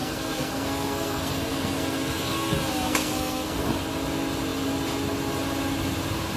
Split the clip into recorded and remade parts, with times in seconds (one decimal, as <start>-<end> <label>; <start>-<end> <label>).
0.0-3.8 remade; 3.8-6.4 recorded